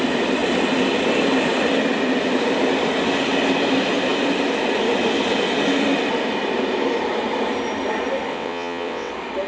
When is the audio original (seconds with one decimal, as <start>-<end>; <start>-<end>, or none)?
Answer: 0.0-8.3; 9.1-9.5